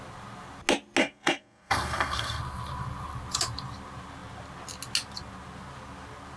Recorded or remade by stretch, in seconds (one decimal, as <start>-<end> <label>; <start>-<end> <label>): 0.0-1.0 recorded; 1.0-2.4 remade; 2.4-6.4 recorded